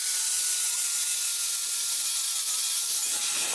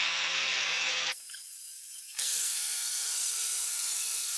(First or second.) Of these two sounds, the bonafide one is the first